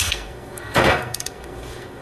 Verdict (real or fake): fake